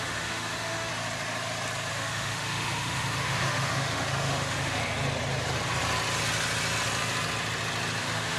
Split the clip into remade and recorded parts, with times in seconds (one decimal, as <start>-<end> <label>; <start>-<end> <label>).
0.0-0.9 remade; 0.9-1.9 recorded; 1.9-4.8 remade; 4.8-8.0 recorded; 8.0-8.4 remade